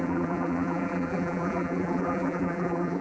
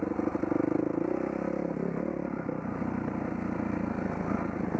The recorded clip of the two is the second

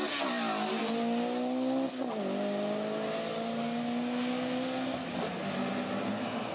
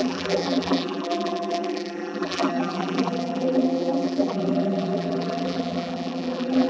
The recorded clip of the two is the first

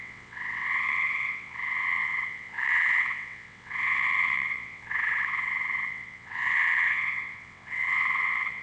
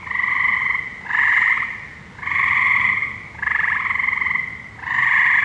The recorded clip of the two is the second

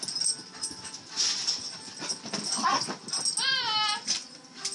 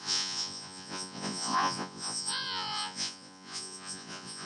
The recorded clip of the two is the first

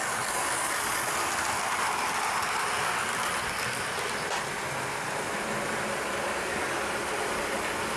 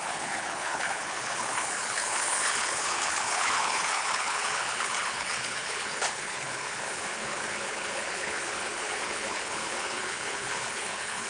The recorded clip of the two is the first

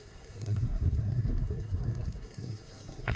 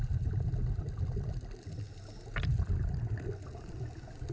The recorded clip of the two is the second